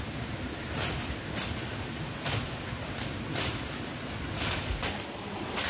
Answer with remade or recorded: recorded